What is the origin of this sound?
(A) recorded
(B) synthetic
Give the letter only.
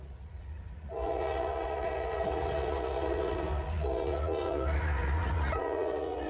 B